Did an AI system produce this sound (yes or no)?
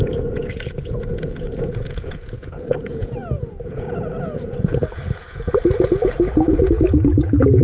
yes